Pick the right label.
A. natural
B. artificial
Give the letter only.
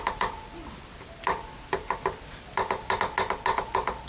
A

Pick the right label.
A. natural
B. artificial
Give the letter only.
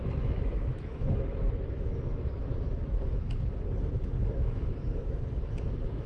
B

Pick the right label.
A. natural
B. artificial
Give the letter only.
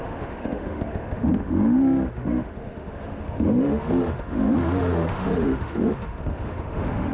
B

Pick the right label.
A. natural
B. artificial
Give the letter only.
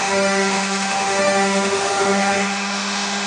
B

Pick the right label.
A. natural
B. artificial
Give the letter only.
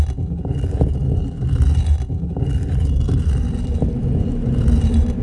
A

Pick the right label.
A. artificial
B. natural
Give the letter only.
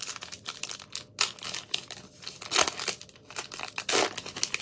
B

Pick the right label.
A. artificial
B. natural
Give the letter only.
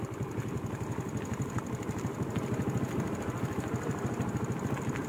B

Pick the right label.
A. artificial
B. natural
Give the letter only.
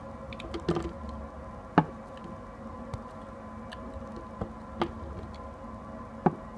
B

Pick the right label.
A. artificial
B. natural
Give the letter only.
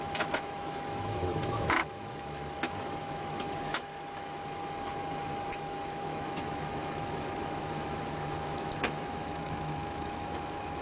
A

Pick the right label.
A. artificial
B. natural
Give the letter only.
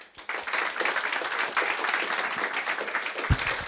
B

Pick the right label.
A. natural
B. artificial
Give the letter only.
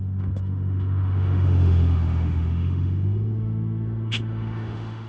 B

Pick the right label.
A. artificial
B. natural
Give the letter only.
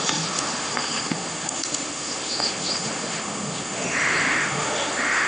A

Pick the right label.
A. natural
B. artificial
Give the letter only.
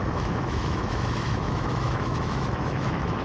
B